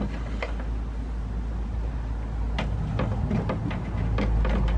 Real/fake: real